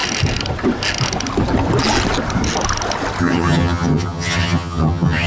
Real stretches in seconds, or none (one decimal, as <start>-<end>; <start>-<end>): 0.0-3.2